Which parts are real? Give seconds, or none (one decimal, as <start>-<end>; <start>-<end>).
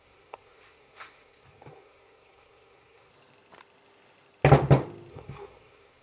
3.1-5.1